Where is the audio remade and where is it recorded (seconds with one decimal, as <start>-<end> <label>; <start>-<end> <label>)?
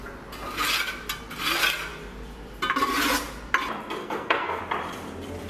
0.0-4.0 recorded; 4.0-4.6 remade; 4.6-5.5 recorded